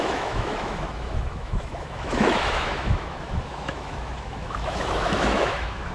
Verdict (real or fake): fake